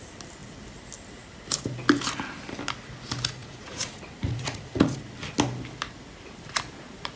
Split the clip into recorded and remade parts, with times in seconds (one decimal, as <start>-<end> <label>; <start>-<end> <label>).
0.0-3.4 recorded; 3.4-5.0 remade; 5.0-7.2 recorded